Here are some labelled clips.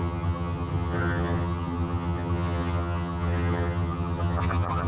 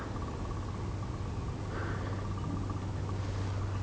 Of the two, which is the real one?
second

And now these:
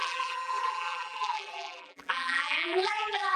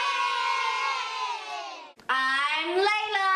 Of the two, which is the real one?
second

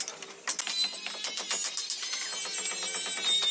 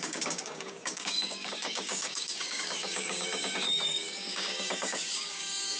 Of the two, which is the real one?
first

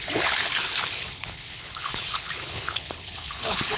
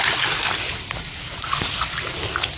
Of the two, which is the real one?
second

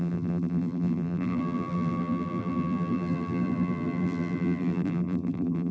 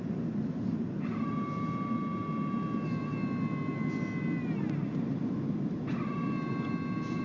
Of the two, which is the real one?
second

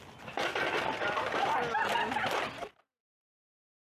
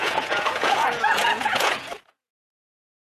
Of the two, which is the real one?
first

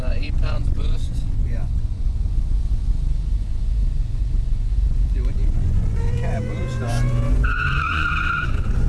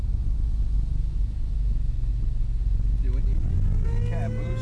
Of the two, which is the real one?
second